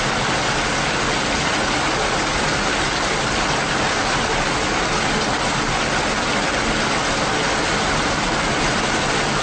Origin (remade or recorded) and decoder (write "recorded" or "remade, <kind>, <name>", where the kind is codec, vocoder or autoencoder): recorded